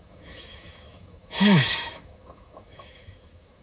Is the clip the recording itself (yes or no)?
no